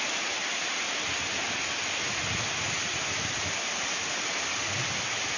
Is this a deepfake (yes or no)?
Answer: no